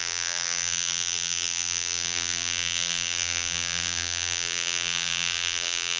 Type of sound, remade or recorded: remade